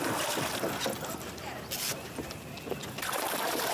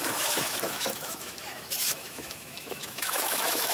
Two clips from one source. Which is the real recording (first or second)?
first